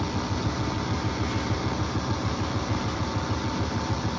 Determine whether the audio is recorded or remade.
recorded